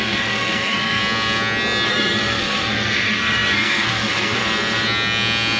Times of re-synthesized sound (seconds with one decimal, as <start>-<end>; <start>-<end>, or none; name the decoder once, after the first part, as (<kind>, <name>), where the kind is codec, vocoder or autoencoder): 0.0-1.0 (codec, SNAC); 1.9-4.4